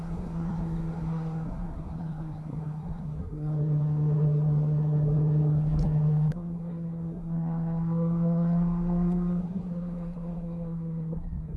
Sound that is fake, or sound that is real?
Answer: fake